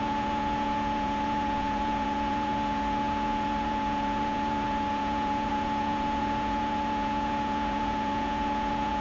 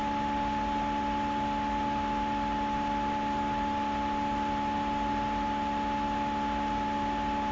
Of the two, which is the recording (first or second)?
second